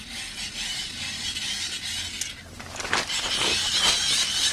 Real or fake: real